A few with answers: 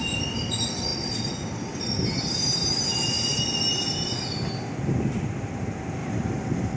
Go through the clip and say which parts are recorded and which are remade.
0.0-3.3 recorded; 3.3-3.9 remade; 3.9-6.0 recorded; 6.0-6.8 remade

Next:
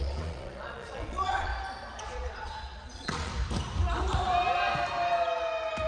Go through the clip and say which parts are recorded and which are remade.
0.0-1.5 remade; 1.5-2.0 recorded; 2.0-3.3 remade; 3.3-5.9 recorded

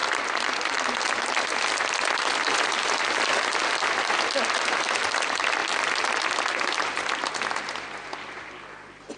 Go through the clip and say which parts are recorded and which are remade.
0.0-9.2 recorded

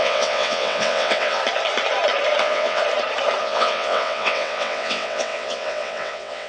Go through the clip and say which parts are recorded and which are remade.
0.0-1.4 remade; 1.4-2.4 recorded; 2.4-2.8 remade; 2.8-3.4 recorded; 3.4-6.5 remade

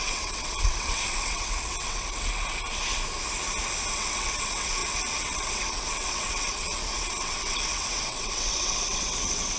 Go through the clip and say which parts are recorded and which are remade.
0.0-2.8 remade; 2.8-3.9 recorded; 3.9-9.6 remade

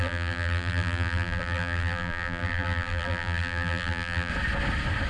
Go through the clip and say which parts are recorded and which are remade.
0.0-4.3 remade; 4.3-5.1 recorded

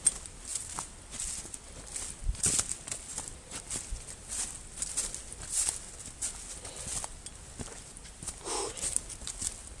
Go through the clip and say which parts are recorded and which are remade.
0.0-9.8 recorded